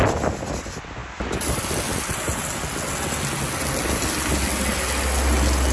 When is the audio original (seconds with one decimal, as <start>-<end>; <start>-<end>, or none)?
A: 0.0-5.7